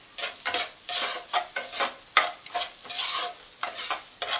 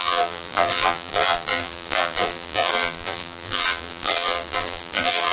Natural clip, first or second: first